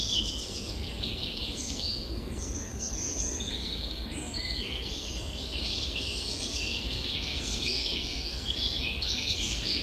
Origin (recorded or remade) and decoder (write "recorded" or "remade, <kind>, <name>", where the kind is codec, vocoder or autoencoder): remade, codec, SNAC